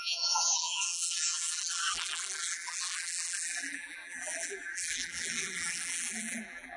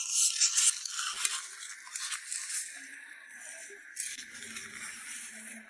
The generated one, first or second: first